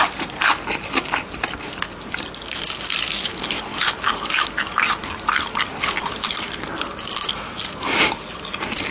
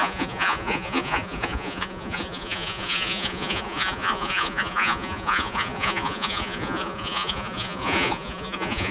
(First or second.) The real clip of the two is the first